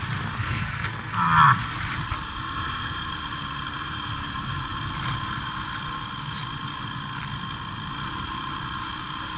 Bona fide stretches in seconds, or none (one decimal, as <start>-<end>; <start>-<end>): 0.0-0.4; 1.1-9.4

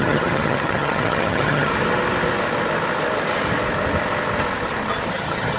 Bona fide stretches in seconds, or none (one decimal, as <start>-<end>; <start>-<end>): 1.7-5.1

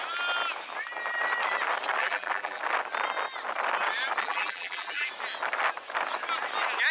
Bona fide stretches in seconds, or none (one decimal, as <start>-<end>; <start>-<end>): 0.0-2.0; 2.6-4.2; 5.1-6.9

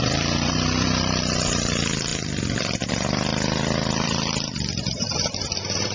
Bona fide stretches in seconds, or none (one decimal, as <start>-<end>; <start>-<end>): none

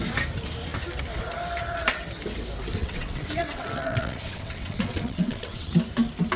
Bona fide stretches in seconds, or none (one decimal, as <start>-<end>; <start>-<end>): 0.0-2.8; 5.7-6.4

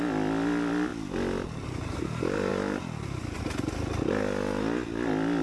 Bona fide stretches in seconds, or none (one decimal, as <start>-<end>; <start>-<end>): 0.0-5.4

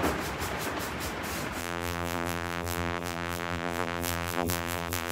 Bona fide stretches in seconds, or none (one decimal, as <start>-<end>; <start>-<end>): 0.0-1.6

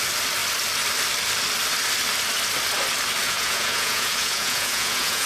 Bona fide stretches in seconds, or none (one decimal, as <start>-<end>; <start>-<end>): 0.0-3.2